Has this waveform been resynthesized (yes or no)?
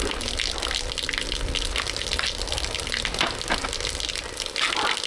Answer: no